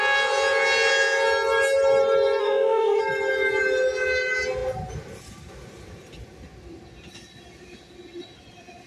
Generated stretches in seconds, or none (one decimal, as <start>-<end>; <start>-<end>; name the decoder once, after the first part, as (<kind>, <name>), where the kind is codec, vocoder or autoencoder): 2.4-3.0 (autoencoder, DAC-VAE)

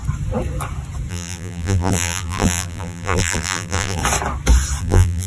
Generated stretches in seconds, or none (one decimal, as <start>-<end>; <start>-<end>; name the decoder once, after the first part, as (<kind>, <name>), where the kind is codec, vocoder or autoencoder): 1.1-4.0 (vocoder, BigVGAN v2); 4.8-5.3

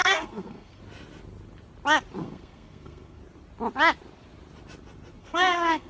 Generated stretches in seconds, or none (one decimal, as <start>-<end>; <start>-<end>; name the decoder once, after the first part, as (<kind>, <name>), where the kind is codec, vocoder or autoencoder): 0.0-0.8 (codec, SNAC); 2.2-3.2; 5.2-5.9

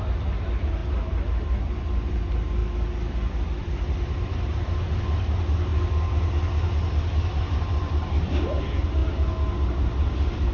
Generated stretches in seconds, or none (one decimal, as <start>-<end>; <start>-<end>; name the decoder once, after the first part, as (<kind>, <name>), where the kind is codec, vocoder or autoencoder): 0.0-2.6 (vocoder, BigVGAN v2); 3.4-5.7; 7.4-9.0; 9.7-10.5